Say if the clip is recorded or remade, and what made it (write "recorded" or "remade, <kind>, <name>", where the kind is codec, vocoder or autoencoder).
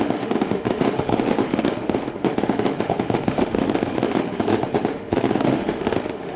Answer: remade, autoencoder, DAC-VAE